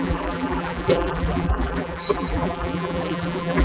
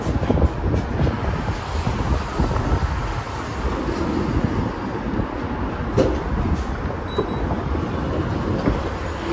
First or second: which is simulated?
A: first